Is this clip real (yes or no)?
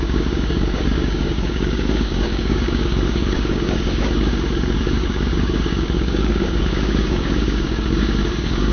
no